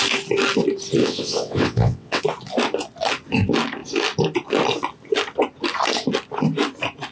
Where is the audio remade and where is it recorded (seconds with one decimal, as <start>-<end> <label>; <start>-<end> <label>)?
0.0-1.0 recorded; 1.0-2.2 remade; 2.2-7.1 recorded